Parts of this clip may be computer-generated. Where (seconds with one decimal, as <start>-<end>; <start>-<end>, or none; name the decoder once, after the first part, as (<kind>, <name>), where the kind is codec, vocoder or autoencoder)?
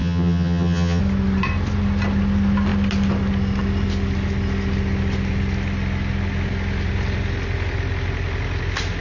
0.0-1.0 (vocoder, HiFi-GAN)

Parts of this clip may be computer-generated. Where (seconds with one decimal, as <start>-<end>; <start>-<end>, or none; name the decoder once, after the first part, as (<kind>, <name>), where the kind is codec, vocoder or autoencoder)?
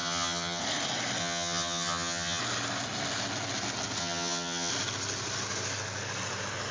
0.0-0.6 (vocoder, HiFi-GAN); 1.2-2.4; 4.0-4.7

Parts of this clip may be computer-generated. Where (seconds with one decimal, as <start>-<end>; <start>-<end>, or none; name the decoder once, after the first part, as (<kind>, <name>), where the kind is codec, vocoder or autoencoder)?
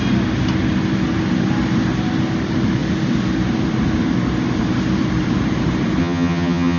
6.0-6.8 (vocoder, HiFi-GAN)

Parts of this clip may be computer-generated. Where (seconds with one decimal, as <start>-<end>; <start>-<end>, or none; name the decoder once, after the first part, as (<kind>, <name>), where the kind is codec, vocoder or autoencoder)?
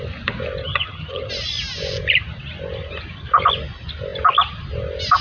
0.6-1.3 (vocoder, HiFi-GAN)